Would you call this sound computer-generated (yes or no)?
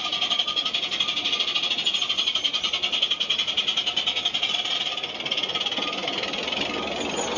no